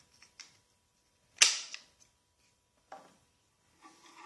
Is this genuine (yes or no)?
yes